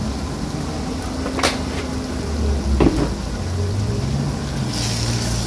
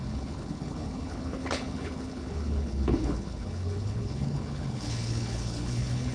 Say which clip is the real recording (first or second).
first